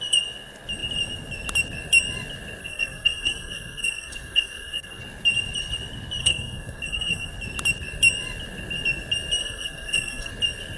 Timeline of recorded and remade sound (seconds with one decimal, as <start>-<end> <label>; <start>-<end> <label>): 0.0-2.6 recorded; 2.6-5.0 remade; 5.0-6.2 recorded; 6.2-7.3 remade; 7.3-9.4 recorded; 9.4-10.3 remade; 10.3-10.8 recorded